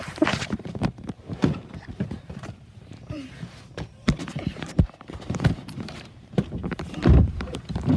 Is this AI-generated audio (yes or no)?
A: yes